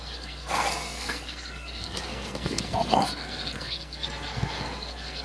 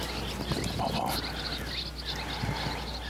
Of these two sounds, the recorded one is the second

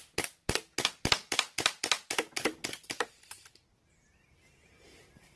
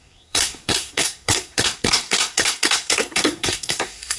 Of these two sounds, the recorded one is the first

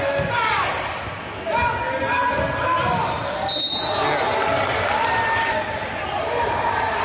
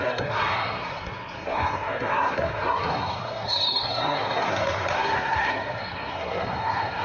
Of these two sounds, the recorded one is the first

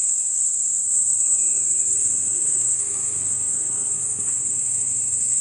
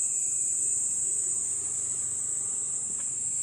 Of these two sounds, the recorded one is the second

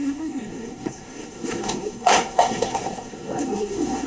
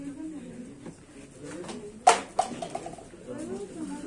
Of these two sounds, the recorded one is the second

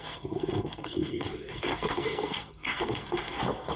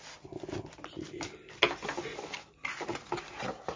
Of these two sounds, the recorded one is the second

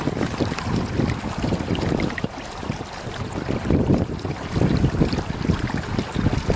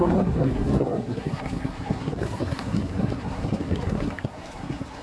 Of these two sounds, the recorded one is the first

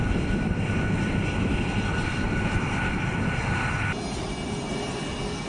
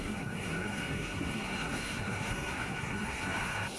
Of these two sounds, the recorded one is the first